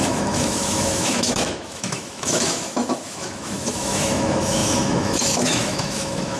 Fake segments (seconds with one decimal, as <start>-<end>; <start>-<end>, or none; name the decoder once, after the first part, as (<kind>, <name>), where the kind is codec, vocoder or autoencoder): 0.0-6.4 (autoencoder, DAC-VAE)